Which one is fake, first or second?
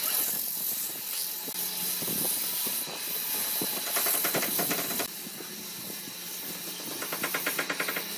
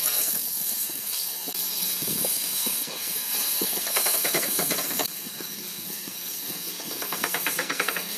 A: second